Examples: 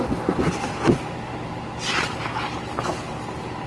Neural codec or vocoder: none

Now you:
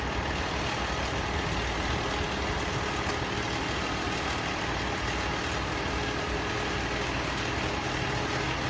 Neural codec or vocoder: none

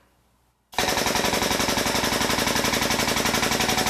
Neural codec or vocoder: none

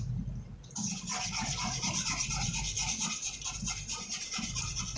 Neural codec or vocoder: none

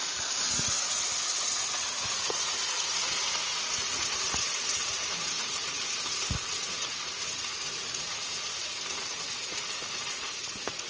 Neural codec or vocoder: vocoder, Vocos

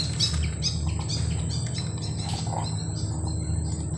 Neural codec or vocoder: none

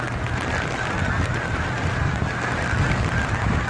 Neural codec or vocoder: none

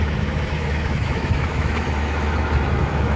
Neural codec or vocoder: autoencoder, DAC-VAE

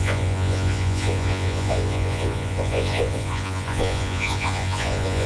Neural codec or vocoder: vocoder, Vocos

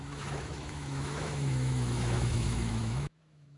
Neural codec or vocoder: autoencoder, DAC-VAE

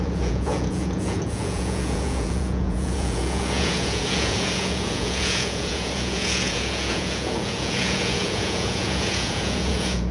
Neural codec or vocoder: vocoder, Vocos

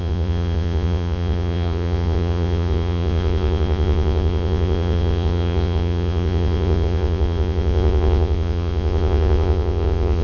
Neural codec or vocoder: vocoder, Vocos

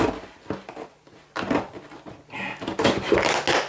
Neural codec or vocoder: none